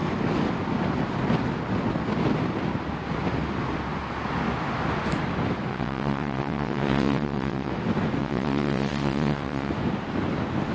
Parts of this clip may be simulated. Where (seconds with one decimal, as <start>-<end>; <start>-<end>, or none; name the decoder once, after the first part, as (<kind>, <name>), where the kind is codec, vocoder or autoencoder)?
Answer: 5.7-7.7 (vocoder, WaveNeXt); 8.2-9.7